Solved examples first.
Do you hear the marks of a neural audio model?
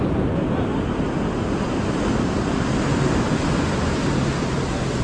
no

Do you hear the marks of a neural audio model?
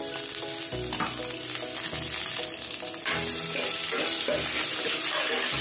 no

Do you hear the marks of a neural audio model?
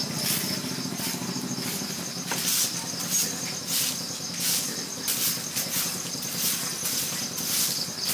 no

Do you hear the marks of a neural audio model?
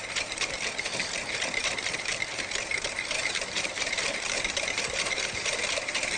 yes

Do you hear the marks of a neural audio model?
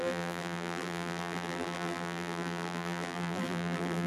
yes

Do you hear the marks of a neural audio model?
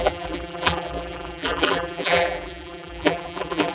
yes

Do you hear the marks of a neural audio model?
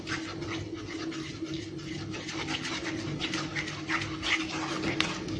no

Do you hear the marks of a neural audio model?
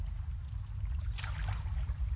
no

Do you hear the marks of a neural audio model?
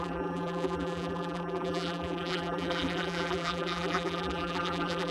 yes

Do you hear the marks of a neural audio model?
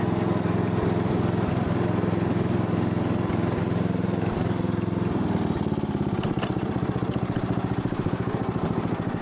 yes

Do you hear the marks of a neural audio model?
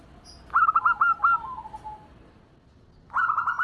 no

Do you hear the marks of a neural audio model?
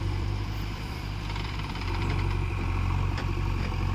yes